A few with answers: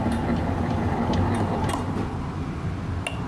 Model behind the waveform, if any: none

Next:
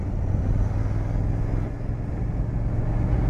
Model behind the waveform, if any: none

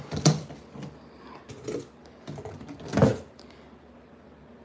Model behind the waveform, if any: none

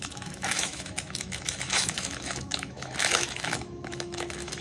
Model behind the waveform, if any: autoencoder, DAC-VAE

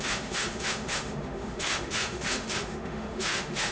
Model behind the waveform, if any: autoencoder, DAC-VAE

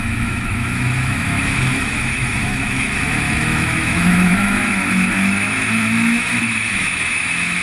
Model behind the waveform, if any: autoencoder, DAC-VAE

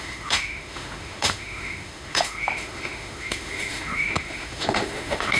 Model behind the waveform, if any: autoencoder, DAC-VAE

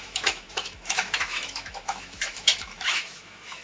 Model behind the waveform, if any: autoencoder, DAC-VAE